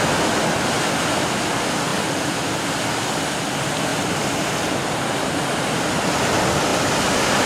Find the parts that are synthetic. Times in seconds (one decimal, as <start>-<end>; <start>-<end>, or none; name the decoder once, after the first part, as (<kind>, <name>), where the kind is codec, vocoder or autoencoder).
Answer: none